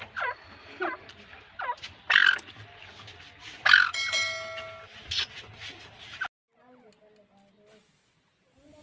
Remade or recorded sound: recorded